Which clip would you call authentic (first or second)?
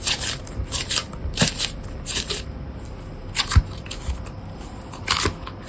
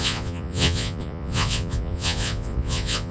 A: first